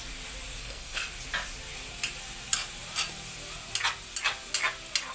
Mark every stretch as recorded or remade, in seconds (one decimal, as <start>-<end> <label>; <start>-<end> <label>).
0.0-0.6 recorded; 0.6-1.1 remade; 1.1-5.1 recorded